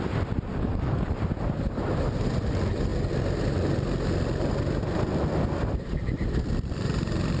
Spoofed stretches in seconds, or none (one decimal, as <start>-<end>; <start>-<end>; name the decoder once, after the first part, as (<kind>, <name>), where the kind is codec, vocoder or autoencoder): 0.5-1.1 (codec, DAC)